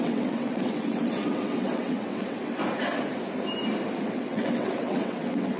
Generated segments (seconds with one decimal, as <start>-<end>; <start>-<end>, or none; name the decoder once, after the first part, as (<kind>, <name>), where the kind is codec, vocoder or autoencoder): 0.0-2.6 (vocoder, WaveNeXt); 4.1-5.6